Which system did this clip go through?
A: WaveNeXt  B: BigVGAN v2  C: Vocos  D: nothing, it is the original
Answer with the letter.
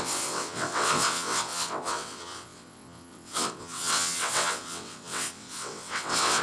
A